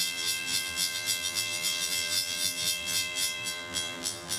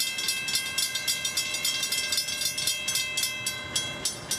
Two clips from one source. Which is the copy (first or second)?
first